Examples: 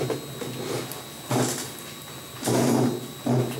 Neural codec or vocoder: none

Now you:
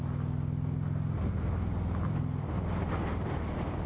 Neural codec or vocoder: none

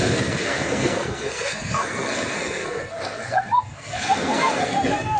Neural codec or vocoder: codec, SNAC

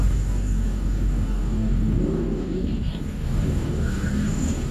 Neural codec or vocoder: codec, DAC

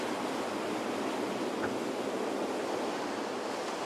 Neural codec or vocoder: none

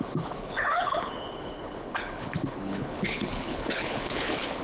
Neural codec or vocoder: codec, HILCodec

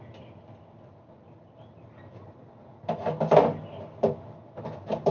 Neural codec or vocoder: none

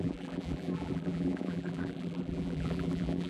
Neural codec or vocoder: vocoder, BigVGAN v2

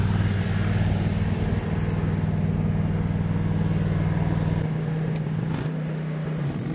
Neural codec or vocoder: none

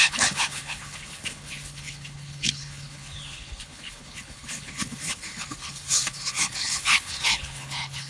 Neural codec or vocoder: codec, HILCodec